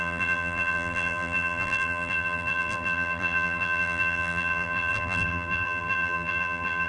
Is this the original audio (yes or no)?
no